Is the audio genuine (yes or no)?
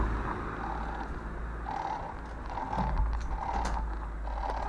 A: yes